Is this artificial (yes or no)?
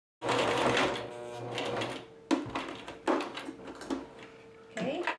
no